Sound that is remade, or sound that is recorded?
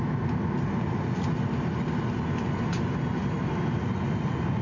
recorded